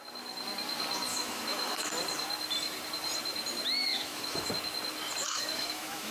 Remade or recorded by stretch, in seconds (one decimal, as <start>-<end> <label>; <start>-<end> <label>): 0.0-1.1 recorded; 1.1-1.9 remade; 1.9-3.9 recorded; 3.9-4.5 remade; 4.5-5.2 recorded; 5.2-6.1 remade